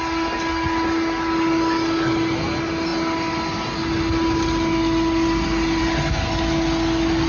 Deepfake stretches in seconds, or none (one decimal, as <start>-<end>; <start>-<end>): none